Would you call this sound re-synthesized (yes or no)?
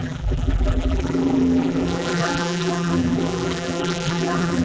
yes